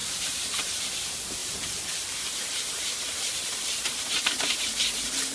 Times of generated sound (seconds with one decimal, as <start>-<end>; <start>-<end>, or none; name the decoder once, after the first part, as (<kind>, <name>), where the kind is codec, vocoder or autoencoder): 0.0-0.8 (vocoder, BigVGAN v2); 1.4-4.3